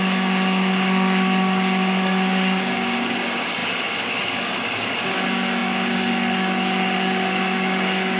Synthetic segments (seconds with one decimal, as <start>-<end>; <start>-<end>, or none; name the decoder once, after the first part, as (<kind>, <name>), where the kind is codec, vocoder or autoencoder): 0.0-8.2 (codec, DAC)